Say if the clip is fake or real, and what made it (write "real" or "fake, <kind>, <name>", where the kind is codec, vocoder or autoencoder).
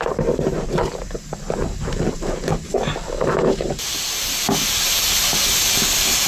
fake, vocoder, BigVGAN v2